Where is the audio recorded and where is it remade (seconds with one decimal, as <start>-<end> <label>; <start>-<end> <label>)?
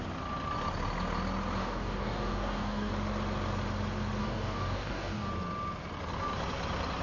0.0-1.6 recorded; 1.6-2.9 remade; 2.9-4.2 recorded; 4.2-5.3 remade; 5.3-7.0 recorded